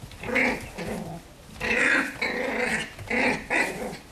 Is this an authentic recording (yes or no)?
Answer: yes